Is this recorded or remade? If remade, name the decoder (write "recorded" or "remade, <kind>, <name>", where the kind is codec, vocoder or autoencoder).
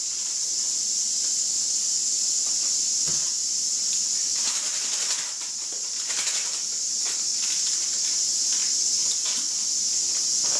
recorded